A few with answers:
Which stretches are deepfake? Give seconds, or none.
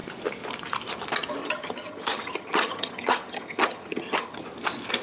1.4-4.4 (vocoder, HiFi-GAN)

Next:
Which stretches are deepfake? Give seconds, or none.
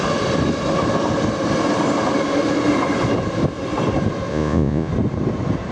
4.3-4.9 (vocoder, Vocos)